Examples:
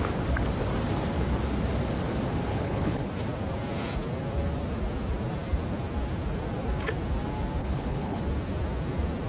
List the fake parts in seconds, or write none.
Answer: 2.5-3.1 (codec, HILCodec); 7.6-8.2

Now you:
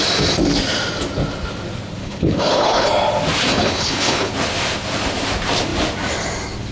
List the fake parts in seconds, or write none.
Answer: 2.0-2.9 (codec, HILCodec); 3.5-4.3

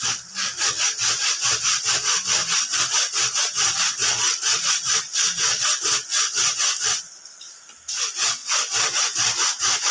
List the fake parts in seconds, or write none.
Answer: none

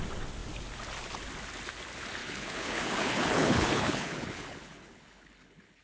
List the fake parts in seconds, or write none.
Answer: 2.2-5.8 (codec, HILCodec)